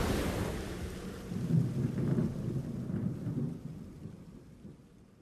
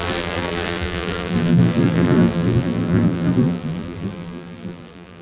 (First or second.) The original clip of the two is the first